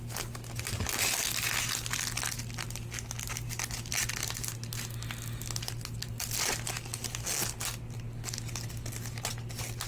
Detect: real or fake real